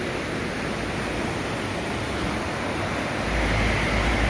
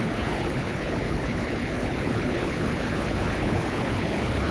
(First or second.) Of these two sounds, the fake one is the second